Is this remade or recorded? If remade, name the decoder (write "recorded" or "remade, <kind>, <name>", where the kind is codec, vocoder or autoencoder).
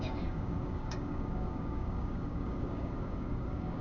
remade, codec, DAC